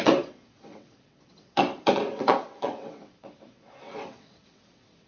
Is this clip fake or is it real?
fake